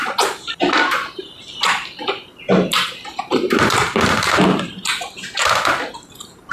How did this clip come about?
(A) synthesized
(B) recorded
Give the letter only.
A